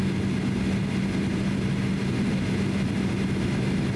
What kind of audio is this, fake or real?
real